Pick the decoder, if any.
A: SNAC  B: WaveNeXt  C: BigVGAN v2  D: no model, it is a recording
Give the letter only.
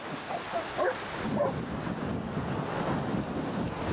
D